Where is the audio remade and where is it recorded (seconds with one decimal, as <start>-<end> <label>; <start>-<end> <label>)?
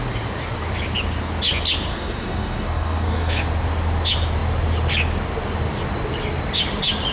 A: 0.0-1.9 recorded; 1.9-3.5 remade; 3.5-7.1 recorded